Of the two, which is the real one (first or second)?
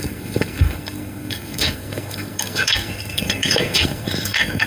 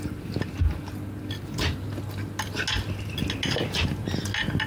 second